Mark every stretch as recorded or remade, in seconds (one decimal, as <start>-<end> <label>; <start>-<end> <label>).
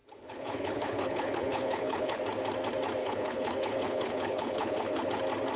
0.0-2.2 remade; 2.2-3.0 recorded; 3.0-5.1 remade; 5.1-5.6 recorded